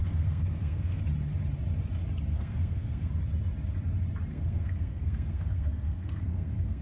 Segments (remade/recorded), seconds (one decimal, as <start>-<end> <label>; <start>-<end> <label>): 0.0-1.0 remade; 1.0-2.3 recorded; 2.3-3.1 remade; 3.1-4.3 recorded; 4.3-6.8 remade